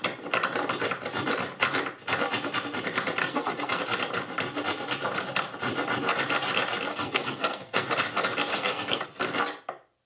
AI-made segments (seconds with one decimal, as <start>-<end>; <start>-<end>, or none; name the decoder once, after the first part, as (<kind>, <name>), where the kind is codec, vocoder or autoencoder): 3.2-3.8 (codec, SNAC); 6.9-7.9; 8.5-9.2